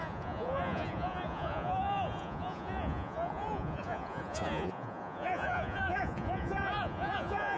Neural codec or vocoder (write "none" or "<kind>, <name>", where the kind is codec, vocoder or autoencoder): vocoder, Vocos